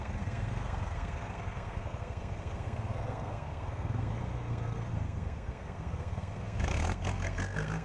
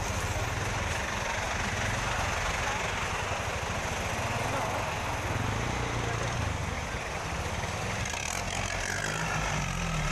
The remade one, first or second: first